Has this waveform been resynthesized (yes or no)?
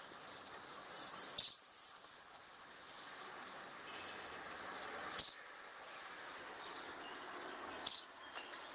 no